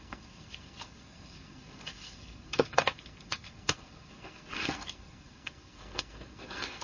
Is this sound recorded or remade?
remade